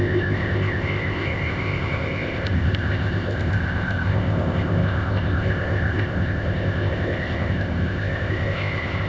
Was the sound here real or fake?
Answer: fake